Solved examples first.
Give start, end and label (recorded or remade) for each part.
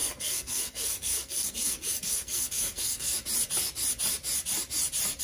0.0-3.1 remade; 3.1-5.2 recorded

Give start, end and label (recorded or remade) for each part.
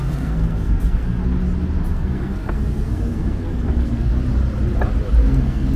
0.0-1.2 remade; 1.2-1.9 recorded; 1.9-4.1 remade; 4.1-5.2 recorded; 5.2-5.8 remade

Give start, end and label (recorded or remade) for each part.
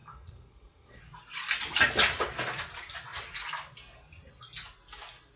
0.0-1.0 remade; 1.0-5.4 recorded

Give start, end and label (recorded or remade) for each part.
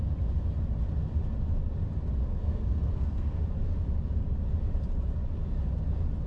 0.0-2.2 recorded; 2.2-3.4 remade; 3.4-6.3 recorded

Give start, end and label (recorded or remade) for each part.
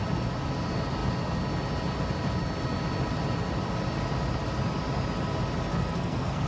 0.0-5.7 recorded; 5.7-6.5 remade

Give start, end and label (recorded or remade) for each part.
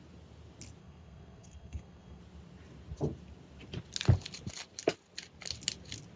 0.0-0.8 recorded; 0.8-2.2 remade; 2.2-6.2 recorded